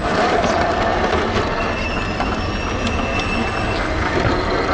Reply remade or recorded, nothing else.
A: recorded